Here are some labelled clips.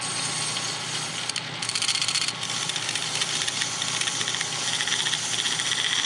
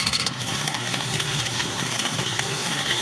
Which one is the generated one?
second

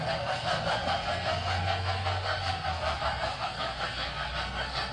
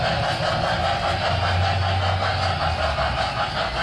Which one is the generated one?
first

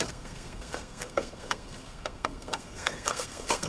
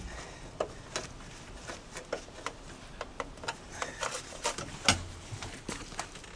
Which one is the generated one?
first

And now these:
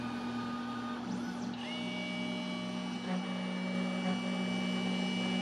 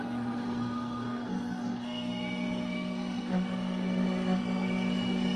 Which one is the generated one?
second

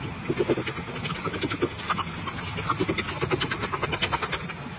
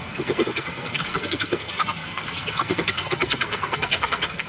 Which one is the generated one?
second